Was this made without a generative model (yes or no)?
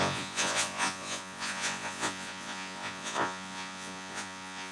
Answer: no